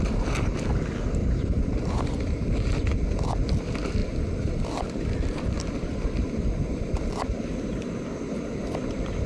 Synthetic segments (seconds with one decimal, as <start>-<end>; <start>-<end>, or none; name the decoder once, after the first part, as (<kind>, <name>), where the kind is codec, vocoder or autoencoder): 1.2-2.0 (vocoder, BigVGAN v2); 4.0-8.6